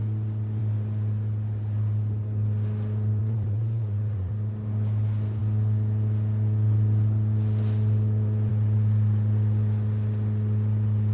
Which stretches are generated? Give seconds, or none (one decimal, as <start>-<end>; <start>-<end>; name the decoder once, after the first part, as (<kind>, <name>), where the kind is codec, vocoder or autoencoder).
3.2-4.3 (vocoder, Vocos)